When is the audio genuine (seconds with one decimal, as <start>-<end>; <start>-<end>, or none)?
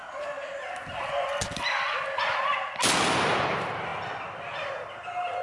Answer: 0.0-5.4